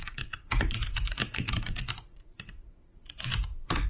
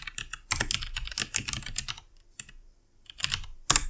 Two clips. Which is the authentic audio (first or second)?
second